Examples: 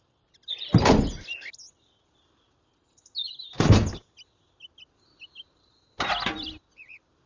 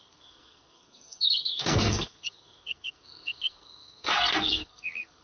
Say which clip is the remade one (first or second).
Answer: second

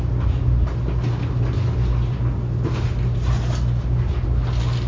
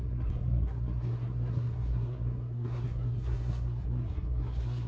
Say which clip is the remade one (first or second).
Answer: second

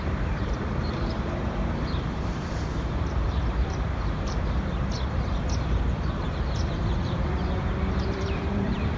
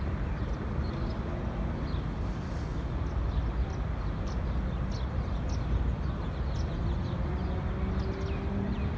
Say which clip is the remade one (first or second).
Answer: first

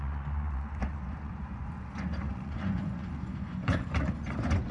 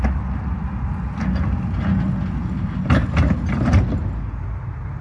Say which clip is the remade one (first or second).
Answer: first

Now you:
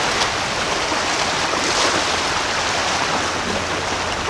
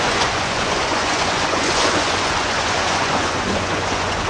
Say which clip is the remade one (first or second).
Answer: second